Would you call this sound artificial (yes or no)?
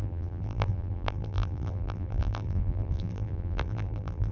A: yes